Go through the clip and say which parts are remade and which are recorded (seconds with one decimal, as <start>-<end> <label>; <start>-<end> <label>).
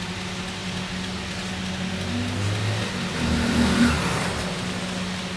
0.0-5.4 recorded